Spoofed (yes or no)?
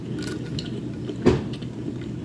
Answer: no